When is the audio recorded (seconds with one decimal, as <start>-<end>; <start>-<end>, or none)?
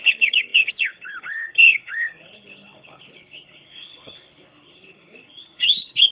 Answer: none